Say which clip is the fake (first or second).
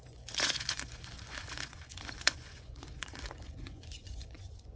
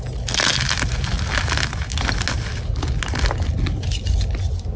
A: first